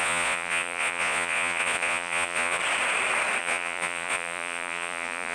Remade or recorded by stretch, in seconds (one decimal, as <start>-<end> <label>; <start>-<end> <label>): 0.0-2.6 remade; 2.6-3.4 recorded; 3.4-5.3 remade